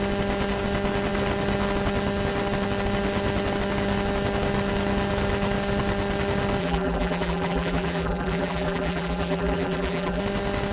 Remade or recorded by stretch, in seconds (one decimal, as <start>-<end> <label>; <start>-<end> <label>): 0.0-6.6 recorded; 6.6-10.2 remade; 10.2-10.7 recorded